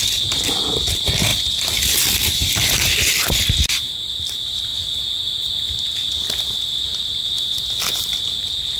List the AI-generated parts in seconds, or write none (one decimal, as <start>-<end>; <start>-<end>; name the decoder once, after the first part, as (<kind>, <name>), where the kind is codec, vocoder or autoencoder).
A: 0.0-4.7 (vocoder, BigVGAN v2); 8.0-8.8

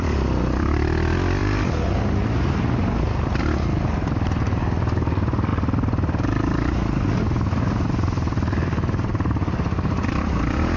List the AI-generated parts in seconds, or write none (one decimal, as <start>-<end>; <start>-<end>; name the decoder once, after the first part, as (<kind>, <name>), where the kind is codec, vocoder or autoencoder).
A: 0.0-1.4 (vocoder, BigVGAN v2); 3.4-5.5; 7.8-10.8

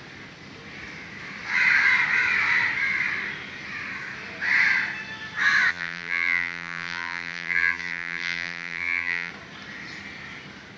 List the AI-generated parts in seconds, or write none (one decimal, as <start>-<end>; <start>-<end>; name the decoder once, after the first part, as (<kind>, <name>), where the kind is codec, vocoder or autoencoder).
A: 5.7-9.3 (vocoder, BigVGAN v2)

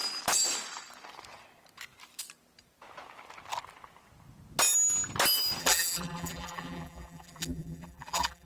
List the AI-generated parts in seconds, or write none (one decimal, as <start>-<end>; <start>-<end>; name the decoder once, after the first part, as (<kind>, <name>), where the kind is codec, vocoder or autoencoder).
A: 5.6-8.5 (vocoder, BigVGAN v2)

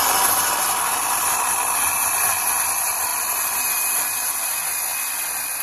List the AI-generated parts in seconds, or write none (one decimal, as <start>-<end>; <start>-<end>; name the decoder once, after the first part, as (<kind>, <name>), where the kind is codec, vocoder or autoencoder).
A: none